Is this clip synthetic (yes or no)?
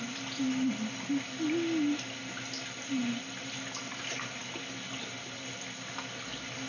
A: no